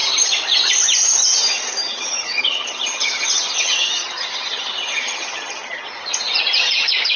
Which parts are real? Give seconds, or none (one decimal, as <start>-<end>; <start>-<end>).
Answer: 0.0-1.8; 6.1-7.2